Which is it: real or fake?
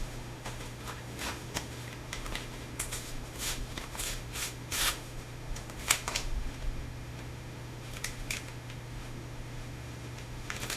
fake